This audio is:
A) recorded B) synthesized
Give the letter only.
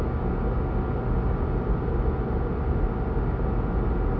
A